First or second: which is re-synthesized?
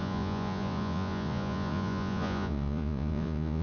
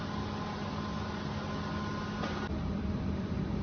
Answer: first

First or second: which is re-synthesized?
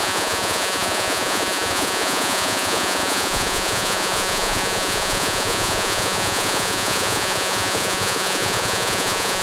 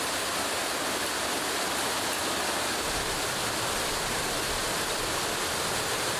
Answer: first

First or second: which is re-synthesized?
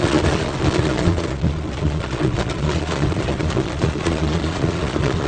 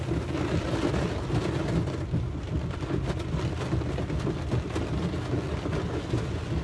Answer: first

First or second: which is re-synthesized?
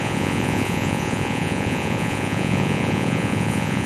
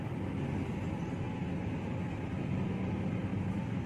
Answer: first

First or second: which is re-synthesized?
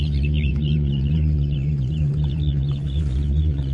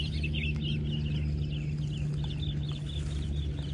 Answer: first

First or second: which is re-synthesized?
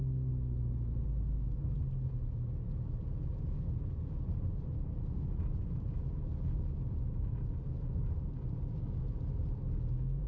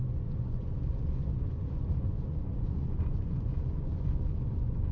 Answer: second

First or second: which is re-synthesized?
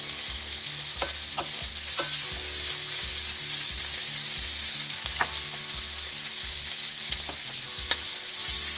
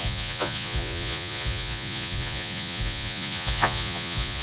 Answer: second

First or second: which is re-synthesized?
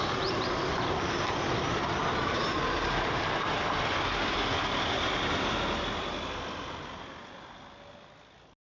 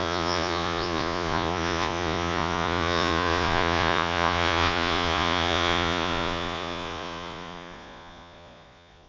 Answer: second